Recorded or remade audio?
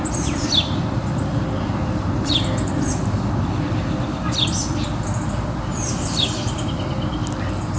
remade